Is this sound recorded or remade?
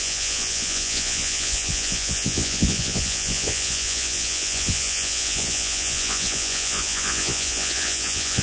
remade